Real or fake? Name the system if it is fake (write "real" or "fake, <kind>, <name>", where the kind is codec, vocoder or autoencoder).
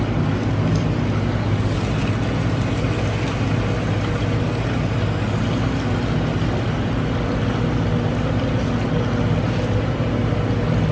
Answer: real